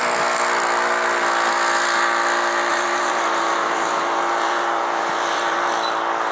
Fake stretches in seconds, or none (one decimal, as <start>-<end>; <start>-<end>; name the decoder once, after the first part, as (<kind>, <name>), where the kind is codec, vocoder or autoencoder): 2.7-5.7 (vocoder, BigVGAN v2)